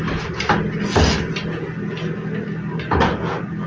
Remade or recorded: recorded